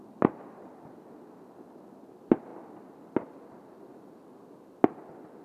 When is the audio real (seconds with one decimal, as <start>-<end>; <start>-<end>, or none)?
0.0-5.4